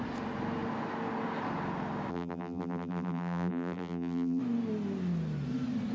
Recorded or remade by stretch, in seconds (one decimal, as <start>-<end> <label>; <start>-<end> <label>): 0.0-2.1 recorded; 2.1-4.4 remade; 4.4-5.9 recorded